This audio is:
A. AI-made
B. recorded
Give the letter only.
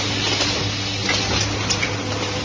B